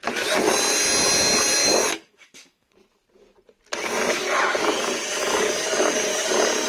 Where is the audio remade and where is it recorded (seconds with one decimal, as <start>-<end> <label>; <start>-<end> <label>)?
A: 0.0-1.6 recorded; 1.6-2.7 remade; 2.7-5.2 recorded; 5.2-6.3 remade; 6.3-6.7 recorded